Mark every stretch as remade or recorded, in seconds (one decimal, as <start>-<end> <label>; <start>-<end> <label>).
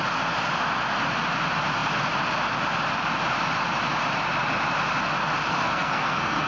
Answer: 0.0-5.5 recorded; 5.5-6.5 remade